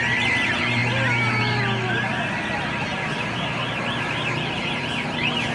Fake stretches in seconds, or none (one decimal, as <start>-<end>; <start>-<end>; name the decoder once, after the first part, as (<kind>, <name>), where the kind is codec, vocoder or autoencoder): none